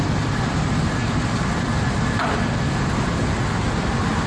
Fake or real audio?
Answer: real